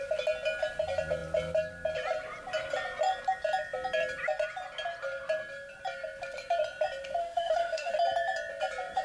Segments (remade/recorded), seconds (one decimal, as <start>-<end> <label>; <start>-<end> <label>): 0.0-7.2 recorded; 7.2-7.9 remade; 7.9-9.0 recorded